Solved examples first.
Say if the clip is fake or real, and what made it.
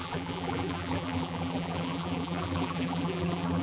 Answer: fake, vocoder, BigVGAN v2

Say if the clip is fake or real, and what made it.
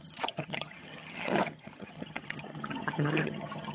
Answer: fake, vocoder, HiFi-GAN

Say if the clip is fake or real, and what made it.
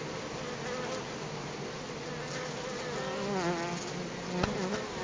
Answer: real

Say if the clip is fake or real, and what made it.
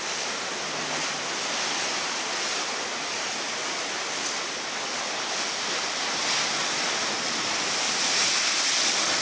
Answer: real